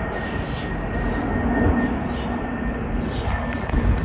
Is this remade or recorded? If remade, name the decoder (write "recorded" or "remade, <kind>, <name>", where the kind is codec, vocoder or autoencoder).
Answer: recorded